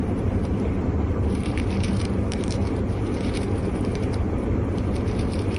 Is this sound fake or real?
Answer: fake